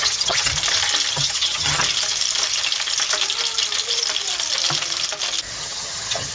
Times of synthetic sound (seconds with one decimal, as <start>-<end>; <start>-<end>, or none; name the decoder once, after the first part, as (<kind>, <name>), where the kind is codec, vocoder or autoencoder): 0.0-0.5 (vocoder, HiFi-GAN); 1.1-1.8; 5.6-6.3